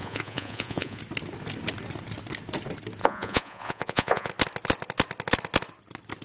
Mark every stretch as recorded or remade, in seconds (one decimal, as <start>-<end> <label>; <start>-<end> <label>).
0.0-1.0 remade; 1.0-3.0 recorded; 3.0-4.3 remade; 4.3-6.2 recorded